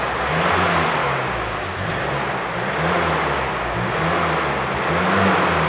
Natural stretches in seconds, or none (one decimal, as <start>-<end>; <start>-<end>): 0.0-1.0; 1.6-5.7

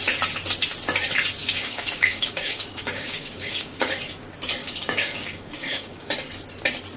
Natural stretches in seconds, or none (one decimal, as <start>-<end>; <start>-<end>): 0.0-1.4; 4.0-4.6; 6.1-7.0

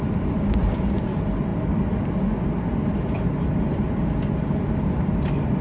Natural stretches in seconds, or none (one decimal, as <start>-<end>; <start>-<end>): 0.0-5.6

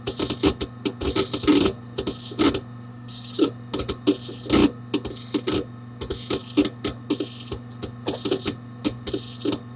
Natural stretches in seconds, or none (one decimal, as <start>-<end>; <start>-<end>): 0.0-2.9; 3.5-9.8